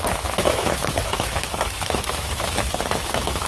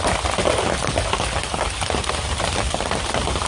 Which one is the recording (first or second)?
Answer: second